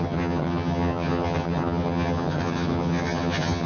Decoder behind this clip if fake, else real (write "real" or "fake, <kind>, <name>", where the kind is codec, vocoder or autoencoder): fake, vocoder, HiFi-GAN